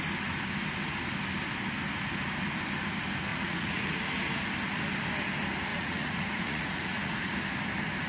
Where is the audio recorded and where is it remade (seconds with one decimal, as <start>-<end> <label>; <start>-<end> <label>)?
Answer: 0.0-3.3 recorded; 3.3-4.0 remade; 4.0-5.7 recorded; 5.7-7.3 remade; 7.3-8.1 recorded